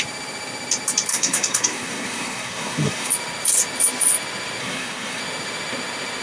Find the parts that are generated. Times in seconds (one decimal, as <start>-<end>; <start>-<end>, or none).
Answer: 1.1-3.1; 4.6-5.2